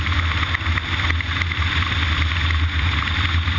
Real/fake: real